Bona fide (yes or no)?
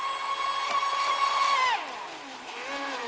yes